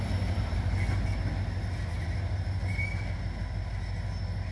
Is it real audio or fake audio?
real